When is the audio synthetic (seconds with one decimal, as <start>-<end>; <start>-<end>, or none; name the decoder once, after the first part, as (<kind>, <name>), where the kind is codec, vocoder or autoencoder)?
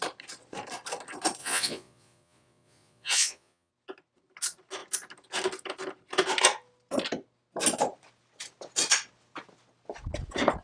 1.4-3.7 (vocoder, Vocos)